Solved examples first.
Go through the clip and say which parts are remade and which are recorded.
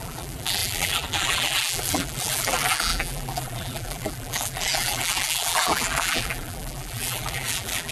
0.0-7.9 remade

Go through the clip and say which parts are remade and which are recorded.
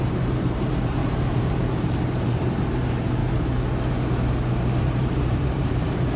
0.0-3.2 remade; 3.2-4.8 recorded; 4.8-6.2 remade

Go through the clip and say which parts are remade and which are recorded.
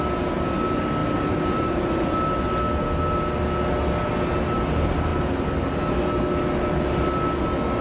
0.0-1.0 recorded; 1.0-1.9 remade; 1.9-7.8 recorded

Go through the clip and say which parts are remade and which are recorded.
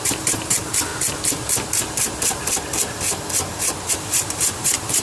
0.0-0.9 remade; 0.9-3.9 recorded; 3.9-5.0 remade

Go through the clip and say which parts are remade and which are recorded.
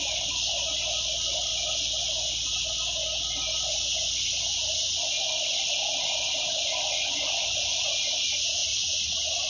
0.0-1.5 remade; 1.5-4.5 recorded; 4.5-9.5 remade